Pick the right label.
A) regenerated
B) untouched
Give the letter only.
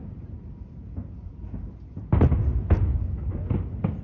B